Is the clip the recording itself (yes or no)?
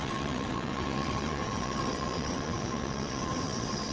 no